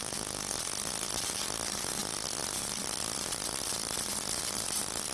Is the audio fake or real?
real